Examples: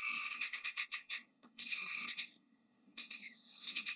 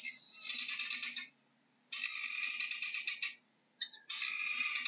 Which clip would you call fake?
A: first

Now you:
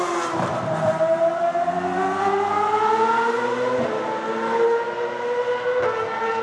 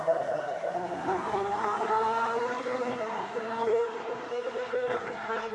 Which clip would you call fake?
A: second